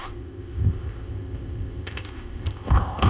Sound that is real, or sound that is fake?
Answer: fake